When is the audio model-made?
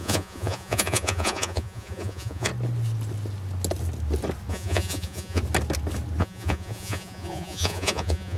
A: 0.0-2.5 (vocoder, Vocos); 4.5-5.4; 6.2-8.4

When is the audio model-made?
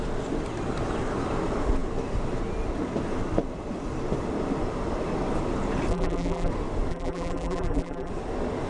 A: 5.9-6.5 (vocoder, BigVGAN v2); 6.9-8.1